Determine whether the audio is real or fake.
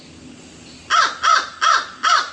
real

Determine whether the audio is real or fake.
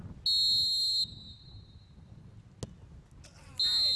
real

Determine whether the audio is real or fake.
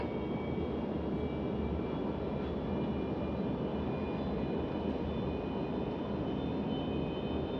real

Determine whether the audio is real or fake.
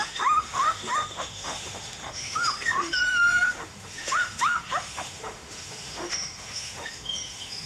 fake